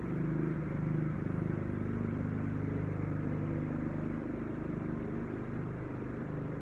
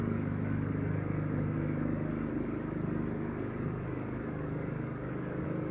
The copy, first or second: second